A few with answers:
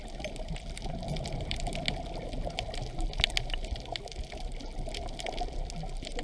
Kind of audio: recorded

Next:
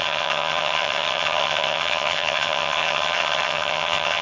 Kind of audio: remade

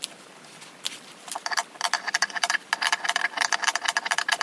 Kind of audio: recorded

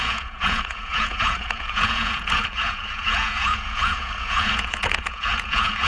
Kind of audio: remade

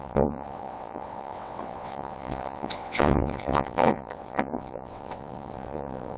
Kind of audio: remade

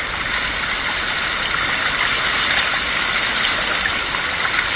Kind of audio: recorded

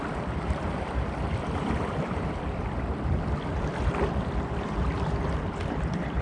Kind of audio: recorded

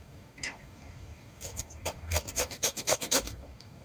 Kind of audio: remade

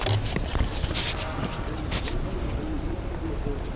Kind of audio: recorded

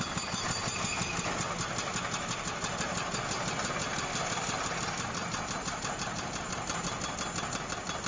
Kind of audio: recorded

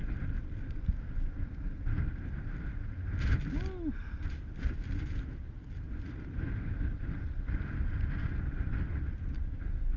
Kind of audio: recorded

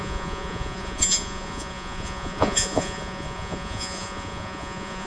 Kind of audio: remade